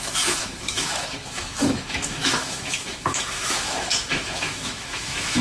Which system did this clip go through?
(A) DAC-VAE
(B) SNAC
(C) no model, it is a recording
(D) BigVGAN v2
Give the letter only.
A